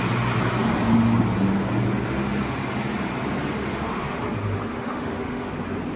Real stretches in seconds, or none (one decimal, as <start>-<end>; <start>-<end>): 0.0-3.7; 4.2-4.7; 5.5-6.0